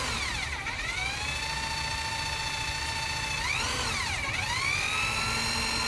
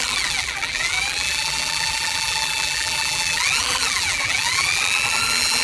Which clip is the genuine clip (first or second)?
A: first